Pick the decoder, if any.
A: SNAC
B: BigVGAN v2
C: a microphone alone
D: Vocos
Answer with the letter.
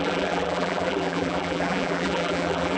B